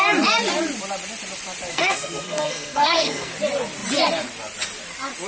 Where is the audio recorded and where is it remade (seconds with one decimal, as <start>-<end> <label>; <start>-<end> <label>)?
0.0-1.7 recorded; 1.7-3.3 remade; 3.3-5.3 recorded